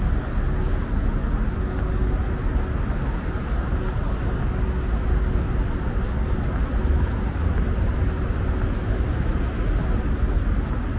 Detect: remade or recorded recorded